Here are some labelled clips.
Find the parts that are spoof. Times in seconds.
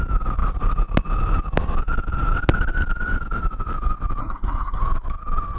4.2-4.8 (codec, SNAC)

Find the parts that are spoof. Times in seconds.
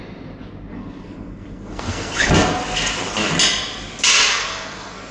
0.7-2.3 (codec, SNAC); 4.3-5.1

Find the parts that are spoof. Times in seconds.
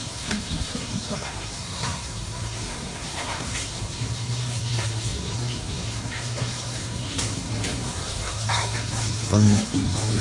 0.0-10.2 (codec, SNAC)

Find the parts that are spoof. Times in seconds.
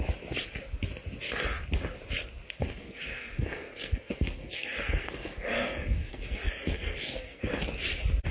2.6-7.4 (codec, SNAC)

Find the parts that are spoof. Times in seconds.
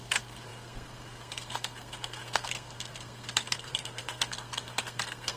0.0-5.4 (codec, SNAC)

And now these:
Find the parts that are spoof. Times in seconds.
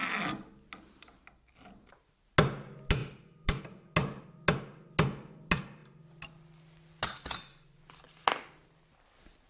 none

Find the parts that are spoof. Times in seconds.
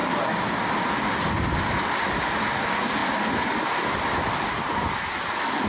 none